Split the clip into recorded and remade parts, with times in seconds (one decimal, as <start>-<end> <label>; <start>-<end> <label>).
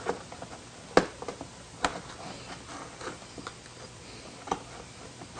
0.0-5.4 recorded